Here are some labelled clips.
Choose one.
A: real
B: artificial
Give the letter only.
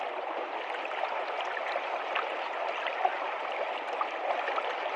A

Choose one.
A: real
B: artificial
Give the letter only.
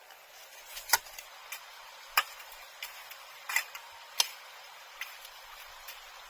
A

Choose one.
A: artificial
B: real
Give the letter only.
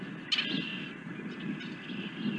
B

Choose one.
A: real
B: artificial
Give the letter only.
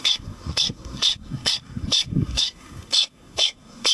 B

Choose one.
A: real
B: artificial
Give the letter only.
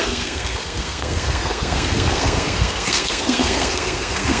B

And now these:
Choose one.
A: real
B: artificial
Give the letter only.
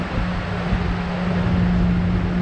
A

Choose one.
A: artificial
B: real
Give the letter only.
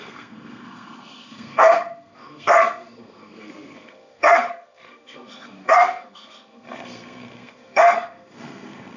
A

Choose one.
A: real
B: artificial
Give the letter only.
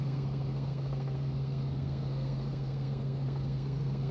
B